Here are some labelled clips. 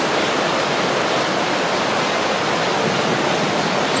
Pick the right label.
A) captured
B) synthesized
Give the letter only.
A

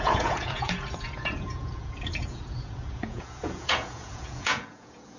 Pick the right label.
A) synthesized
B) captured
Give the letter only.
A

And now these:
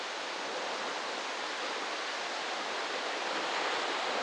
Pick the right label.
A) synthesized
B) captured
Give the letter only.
B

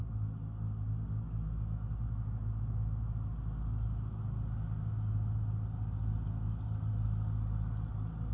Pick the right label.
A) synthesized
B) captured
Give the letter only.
B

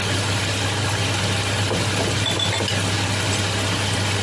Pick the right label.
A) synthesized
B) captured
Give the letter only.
B